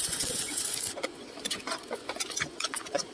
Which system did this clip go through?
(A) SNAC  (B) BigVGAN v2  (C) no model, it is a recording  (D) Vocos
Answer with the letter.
D